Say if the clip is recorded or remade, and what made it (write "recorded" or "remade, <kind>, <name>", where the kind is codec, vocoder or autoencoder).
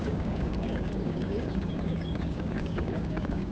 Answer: remade, codec, DAC